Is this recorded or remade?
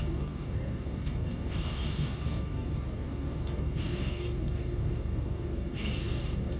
remade